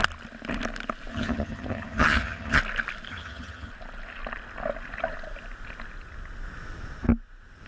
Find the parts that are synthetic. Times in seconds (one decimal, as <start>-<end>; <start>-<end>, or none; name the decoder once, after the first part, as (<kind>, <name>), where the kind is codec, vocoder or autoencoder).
1.1-2.6 (vocoder, HiFi-GAN); 3.1-3.7